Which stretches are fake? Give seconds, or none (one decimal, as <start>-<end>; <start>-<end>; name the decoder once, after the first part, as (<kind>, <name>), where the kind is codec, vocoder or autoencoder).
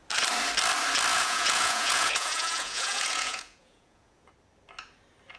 1.1-4.3 (vocoder, Vocos)